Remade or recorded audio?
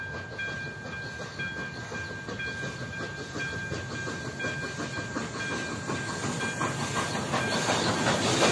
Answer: recorded